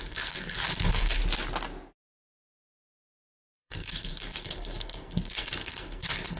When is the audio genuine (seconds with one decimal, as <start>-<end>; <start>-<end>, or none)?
1.2-2.2

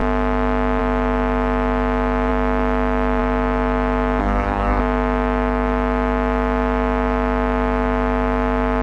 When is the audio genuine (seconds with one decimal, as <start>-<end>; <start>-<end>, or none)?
0.0-4.2; 4.8-8.8

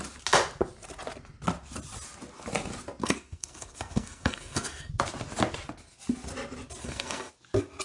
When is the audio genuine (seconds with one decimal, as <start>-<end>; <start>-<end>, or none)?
0.0-3.0; 4.9-6.8; 7.3-7.8

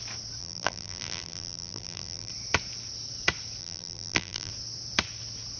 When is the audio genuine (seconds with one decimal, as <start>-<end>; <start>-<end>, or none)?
0.0-0.4; 2.3-3.6; 4.5-5.6

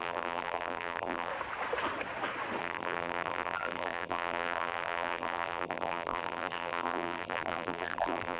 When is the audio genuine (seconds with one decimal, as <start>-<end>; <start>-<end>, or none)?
1.3-2.6